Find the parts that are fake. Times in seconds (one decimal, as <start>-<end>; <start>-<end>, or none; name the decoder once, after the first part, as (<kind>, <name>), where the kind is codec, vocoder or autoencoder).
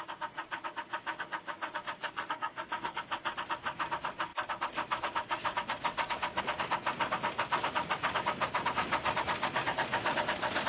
2.0-3.0 (codec, SNAC)